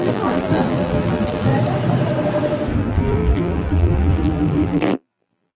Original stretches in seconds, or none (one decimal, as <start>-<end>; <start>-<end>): 1.5-2.8